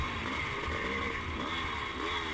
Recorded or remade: recorded